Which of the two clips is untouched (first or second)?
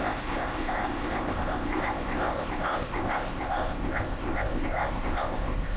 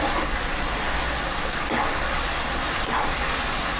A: second